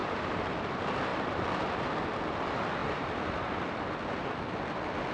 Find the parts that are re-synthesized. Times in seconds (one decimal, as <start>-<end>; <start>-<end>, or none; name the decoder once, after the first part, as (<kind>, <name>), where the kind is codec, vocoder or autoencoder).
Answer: none